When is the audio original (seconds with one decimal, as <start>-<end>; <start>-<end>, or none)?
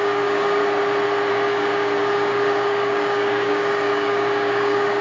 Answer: 0.6-1.3